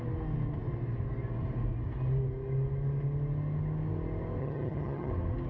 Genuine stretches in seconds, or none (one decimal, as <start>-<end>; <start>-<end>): 0.0-4.4; 5.1-5.5